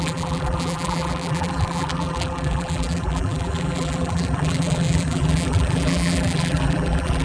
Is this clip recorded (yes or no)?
no